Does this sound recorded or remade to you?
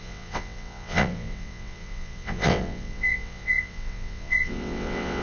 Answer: remade